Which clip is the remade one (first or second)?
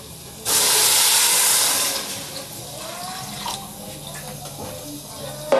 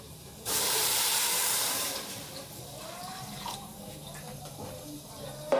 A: second